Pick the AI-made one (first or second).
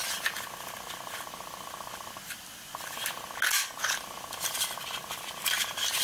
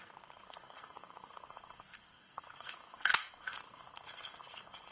second